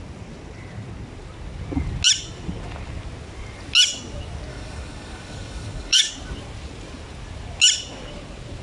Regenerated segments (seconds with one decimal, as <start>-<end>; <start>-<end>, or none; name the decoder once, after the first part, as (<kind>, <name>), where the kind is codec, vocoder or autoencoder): 4.5-6.1 (codec, DAC)